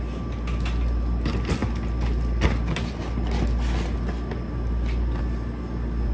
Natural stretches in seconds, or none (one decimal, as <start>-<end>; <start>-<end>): 0.0-6.1